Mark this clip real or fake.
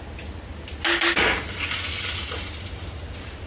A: real